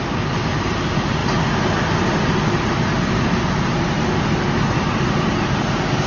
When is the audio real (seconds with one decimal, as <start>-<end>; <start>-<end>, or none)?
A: 0.0-6.1